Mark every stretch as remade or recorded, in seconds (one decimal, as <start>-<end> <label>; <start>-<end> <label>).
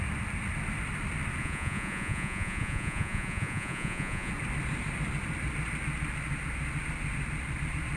0.0-1.4 recorded; 1.4-4.3 remade; 4.3-8.0 recorded